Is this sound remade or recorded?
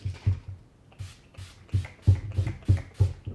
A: recorded